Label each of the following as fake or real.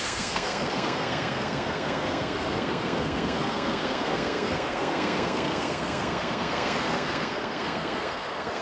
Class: fake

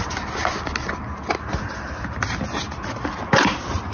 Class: real